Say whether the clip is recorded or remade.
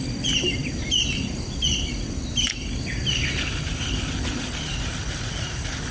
recorded